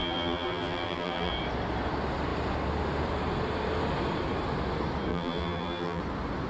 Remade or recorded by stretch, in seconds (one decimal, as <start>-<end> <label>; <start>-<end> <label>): 0.0-1.3 remade; 1.3-5.1 recorded; 5.1-6.0 remade; 6.0-6.5 recorded